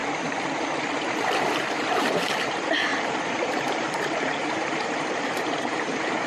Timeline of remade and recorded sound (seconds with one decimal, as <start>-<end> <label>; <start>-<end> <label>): 0.0-1.5 recorded; 1.5-6.3 remade